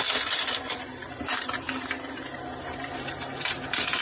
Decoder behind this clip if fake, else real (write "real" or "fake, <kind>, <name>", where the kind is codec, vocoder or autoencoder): fake, vocoder, BigVGAN v2